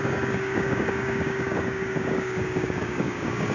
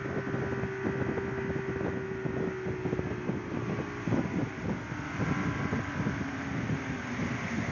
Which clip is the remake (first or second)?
first